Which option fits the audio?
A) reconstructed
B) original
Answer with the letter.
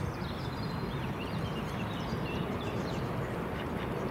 A